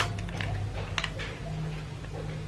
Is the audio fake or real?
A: real